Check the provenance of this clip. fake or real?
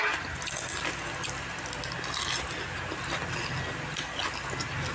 real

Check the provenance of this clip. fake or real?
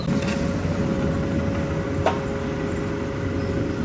real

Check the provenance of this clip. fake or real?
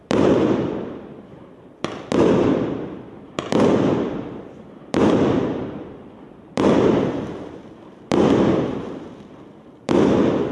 fake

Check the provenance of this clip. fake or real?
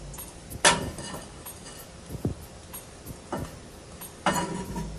real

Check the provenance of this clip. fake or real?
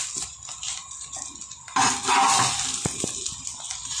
real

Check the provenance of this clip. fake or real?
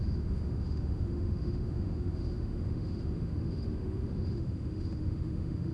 fake